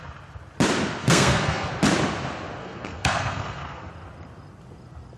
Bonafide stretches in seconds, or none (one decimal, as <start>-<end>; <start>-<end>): 0.0-1.0; 1.7-2.6; 3.9-5.2